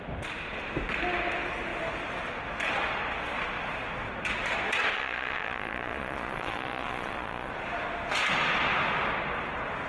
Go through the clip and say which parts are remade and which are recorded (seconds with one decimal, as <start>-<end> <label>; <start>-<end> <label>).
0.0-4.9 recorded; 4.9-7.5 remade; 7.5-9.9 recorded